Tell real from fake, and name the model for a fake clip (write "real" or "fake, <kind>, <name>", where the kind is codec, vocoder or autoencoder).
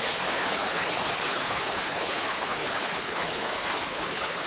fake, codec, HILCodec